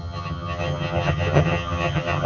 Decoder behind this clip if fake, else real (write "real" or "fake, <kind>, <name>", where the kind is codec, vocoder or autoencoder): fake, vocoder, HiFi-GAN